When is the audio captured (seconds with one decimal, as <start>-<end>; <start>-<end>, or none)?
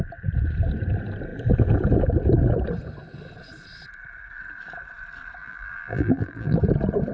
0.0-5.4; 6.6-7.1